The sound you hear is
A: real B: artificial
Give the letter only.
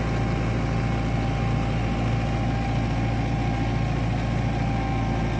A